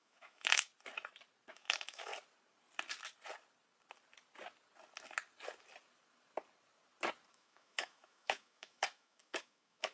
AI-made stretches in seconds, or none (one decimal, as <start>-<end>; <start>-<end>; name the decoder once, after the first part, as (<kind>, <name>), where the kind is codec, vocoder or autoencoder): 0.0-0.7 (autoencoder, DAC-VAE); 1.5-2.1; 7.3-9.9